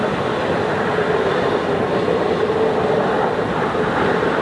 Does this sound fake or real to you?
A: real